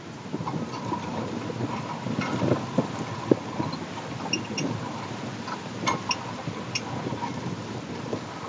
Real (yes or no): yes